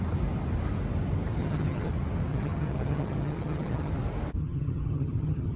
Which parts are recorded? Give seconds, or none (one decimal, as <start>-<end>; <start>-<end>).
0.0-1.4; 1.9-2.3; 3.9-4.4